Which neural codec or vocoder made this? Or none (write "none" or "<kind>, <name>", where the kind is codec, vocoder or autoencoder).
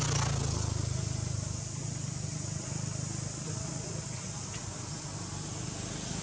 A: none